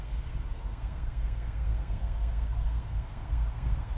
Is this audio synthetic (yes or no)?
yes